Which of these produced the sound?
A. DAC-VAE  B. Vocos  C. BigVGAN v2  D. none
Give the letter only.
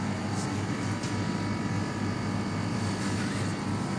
D